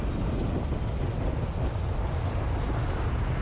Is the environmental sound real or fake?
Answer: real